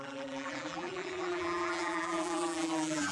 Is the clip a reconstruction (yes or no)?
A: yes